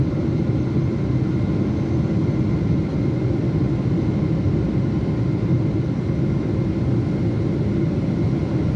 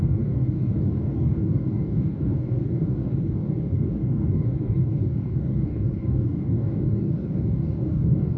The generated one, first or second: second